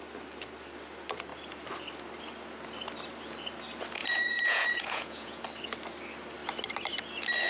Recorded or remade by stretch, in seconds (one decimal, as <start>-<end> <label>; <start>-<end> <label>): 0.0-4.0 recorded; 4.0-5.4 remade; 5.4-7.5 recorded